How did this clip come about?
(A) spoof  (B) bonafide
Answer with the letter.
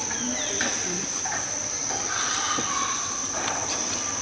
B